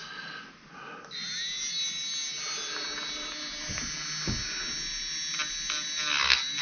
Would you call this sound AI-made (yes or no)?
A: no